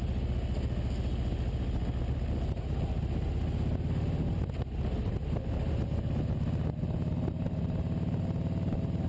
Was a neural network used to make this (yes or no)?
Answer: no